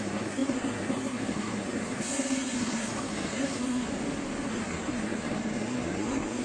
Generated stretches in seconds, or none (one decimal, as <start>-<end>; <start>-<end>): 0.0-3.9; 4.5-6.4